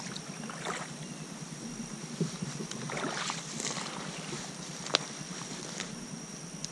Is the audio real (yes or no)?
no